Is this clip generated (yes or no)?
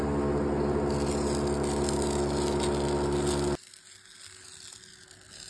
no